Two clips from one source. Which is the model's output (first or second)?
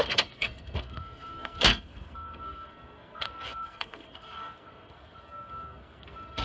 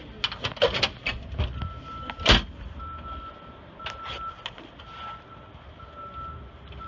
first